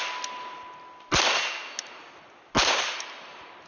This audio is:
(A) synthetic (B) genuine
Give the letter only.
B